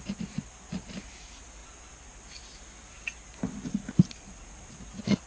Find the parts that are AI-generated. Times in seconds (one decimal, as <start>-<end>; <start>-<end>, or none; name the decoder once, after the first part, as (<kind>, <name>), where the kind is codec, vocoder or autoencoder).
none